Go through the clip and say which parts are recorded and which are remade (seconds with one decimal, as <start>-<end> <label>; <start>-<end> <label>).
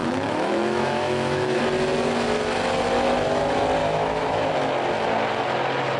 0.0-1.6 remade; 1.6-3.8 recorded; 3.8-4.5 remade; 4.5-6.0 recorded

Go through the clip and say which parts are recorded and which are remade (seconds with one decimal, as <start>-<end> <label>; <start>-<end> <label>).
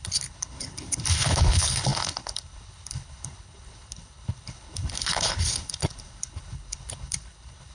0.0-7.7 remade